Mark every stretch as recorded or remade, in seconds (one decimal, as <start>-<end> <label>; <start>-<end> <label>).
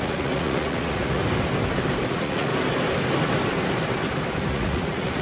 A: 0.0-1.2 remade; 1.2-2.1 recorded; 2.1-2.5 remade; 2.5-4.5 recorded; 4.5-5.2 remade